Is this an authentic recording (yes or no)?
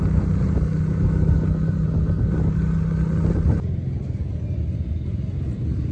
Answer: yes